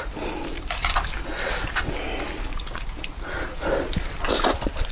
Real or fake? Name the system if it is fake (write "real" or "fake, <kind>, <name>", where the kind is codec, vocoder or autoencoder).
real